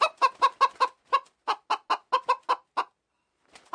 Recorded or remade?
recorded